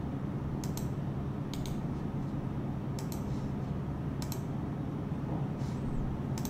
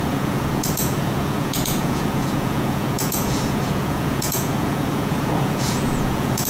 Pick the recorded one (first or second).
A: first